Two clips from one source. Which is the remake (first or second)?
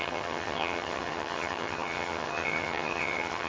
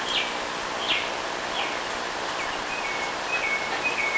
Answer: first